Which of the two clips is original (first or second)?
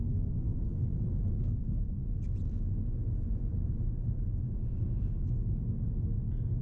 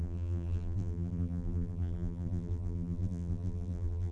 first